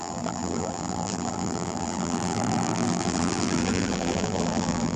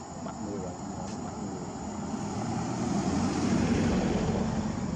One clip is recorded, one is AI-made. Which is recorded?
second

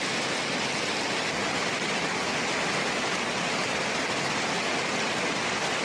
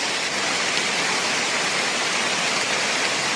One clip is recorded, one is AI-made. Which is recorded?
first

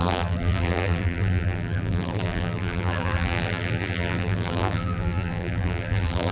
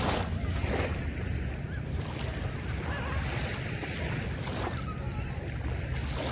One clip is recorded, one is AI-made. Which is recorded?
second